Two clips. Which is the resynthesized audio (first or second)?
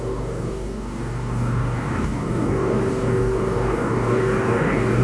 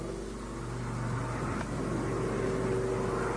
first